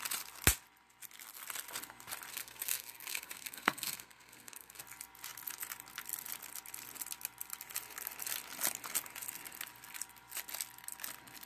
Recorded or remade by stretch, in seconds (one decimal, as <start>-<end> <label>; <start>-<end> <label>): 0.0-2.3 recorded; 2.3-4.8 remade; 4.8-11.5 recorded